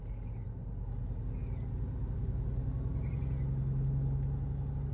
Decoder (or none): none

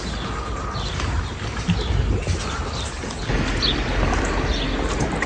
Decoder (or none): none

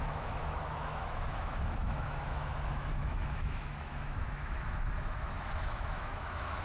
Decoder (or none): autoencoder, DAC-VAE